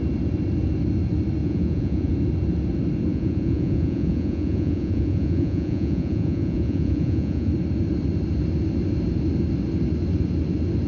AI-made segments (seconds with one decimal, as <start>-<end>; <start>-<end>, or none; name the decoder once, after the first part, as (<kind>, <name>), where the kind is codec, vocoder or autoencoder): 1.4-2.1 (vocoder, Vocos); 3.1-7.5